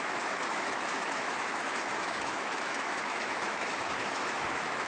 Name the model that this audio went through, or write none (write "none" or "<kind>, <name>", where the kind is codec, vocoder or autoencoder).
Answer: autoencoder, DAC-VAE